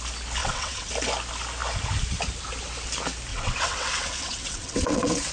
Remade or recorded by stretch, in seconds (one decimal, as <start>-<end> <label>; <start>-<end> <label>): 0.0-0.4 recorded; 0.4-0.9 remade; 0.9-3.3 recorded; 3.3-5.3 remade